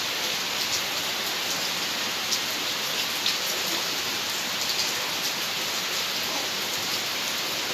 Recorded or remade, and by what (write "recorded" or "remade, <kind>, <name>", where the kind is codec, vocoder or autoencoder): recorded